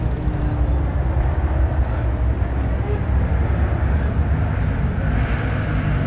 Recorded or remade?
recorded